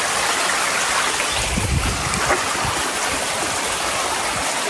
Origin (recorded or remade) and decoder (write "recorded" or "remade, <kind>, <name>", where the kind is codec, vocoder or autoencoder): recorded